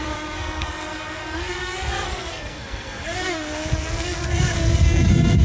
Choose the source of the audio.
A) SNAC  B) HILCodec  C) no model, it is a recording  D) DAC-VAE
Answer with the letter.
A